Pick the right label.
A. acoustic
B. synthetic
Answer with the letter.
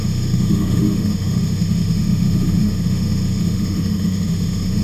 B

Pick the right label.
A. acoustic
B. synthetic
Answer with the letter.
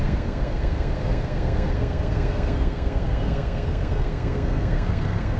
B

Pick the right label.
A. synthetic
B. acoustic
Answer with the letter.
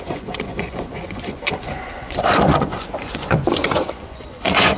A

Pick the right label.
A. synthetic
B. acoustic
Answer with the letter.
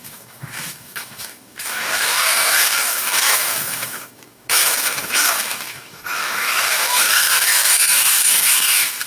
A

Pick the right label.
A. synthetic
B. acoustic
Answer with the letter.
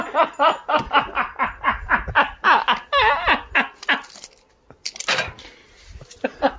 B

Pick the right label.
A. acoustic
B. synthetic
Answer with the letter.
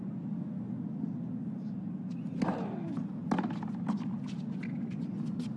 A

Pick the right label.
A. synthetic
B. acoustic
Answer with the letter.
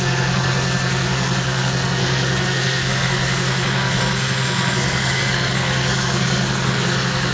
A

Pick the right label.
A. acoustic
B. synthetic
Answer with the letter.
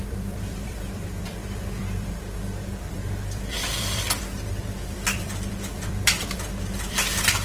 B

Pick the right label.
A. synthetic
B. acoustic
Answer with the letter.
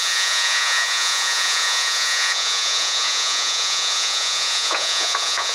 A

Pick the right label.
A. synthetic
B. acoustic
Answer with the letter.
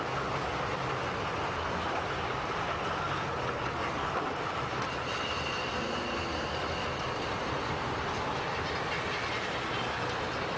B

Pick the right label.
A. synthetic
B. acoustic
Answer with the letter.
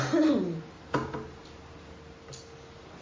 B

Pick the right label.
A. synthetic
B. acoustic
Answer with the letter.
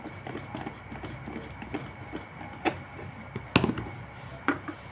B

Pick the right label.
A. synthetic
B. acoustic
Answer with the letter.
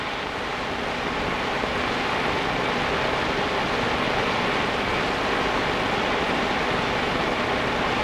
B